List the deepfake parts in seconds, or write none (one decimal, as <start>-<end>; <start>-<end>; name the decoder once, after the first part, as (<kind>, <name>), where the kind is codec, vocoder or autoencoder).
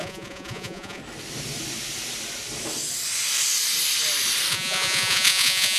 0.0-1.0 (vocoder, Vocos); 4.5-5.8